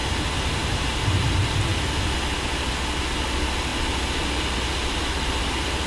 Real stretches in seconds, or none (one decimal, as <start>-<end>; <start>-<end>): 0.0-5.9